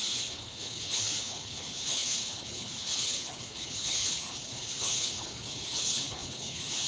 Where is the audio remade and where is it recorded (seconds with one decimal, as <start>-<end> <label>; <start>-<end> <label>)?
0.0-6.9 remade